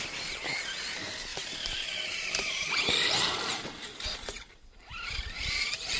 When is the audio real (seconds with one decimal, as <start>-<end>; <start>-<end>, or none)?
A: 0.0-1.3; 4.9-6.0